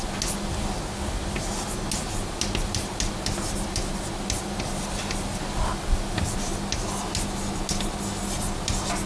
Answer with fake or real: real